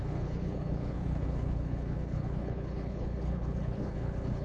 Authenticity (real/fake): fake